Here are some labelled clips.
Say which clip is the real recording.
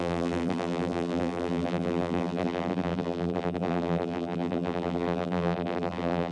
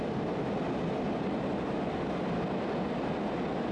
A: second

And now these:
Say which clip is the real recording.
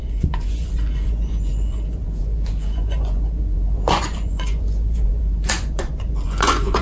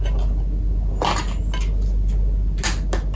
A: second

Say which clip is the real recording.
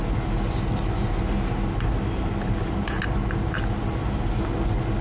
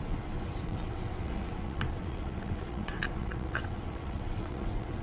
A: first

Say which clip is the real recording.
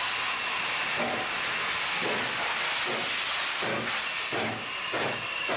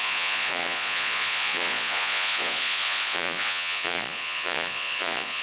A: first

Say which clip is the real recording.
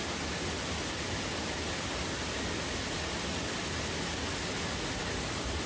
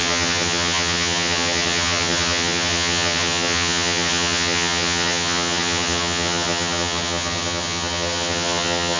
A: first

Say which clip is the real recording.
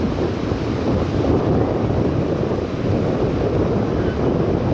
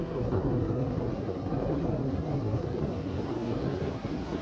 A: first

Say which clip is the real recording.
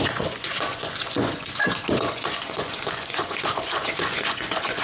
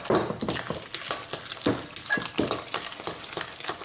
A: second